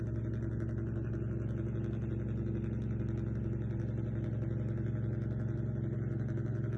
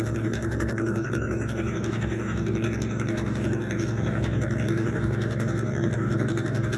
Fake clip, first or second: second